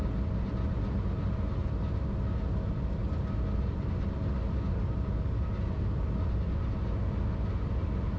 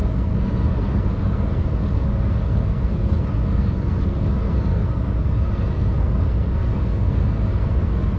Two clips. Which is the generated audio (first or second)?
second